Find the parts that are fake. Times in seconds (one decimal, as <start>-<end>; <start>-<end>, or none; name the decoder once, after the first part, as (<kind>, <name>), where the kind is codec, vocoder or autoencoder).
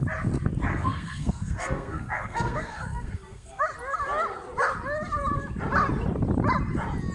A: 0.7-3.6 (codec, SNAC)